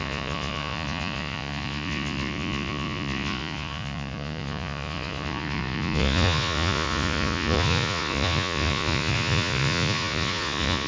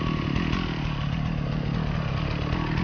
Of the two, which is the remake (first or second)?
first